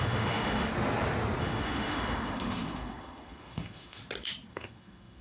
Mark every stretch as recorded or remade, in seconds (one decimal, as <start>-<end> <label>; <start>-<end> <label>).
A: 0.0-0.7 remade; 0.7-1.4 recorded; 1.4-4.0 remade; 4.0-4.5 recorded; 4.5-5.2 remade